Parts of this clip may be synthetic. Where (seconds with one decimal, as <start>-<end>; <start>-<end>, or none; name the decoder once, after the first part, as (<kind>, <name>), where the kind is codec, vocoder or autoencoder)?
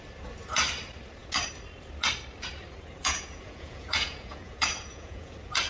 3.0-5.3 (vocoder, Vocos)